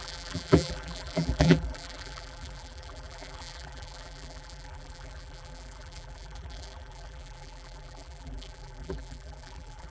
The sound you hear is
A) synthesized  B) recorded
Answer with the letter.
A